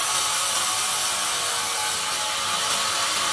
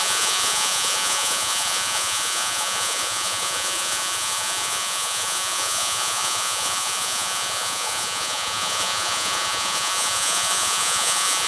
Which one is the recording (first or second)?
first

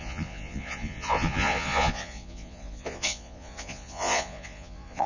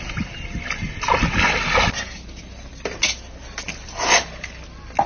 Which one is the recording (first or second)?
second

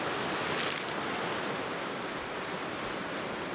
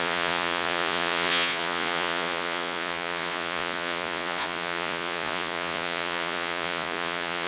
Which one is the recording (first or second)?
first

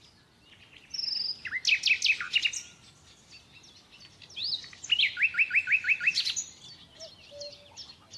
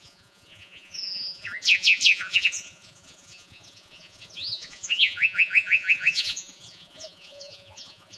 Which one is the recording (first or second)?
first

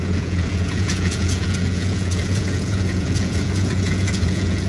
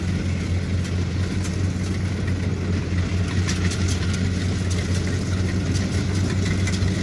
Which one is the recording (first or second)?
second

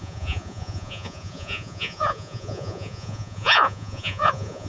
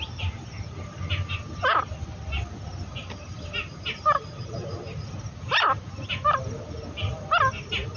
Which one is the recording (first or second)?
second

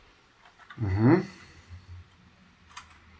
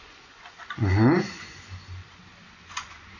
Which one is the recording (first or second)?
first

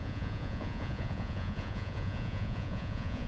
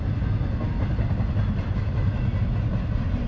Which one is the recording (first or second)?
second